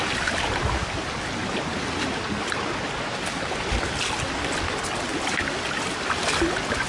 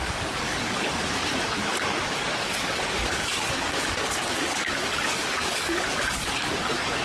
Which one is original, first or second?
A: first